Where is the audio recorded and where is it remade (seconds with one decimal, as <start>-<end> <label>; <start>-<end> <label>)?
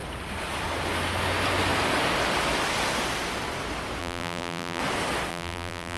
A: 0.0-4.0 recorded; 4.0-4.8 remade; 4.8-5.3 recorded; 5.3-6.0 remade